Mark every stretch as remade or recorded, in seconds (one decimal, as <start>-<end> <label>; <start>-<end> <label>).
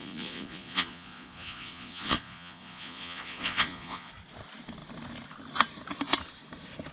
0.0-4.1 remade; 4.1-6.9 recorded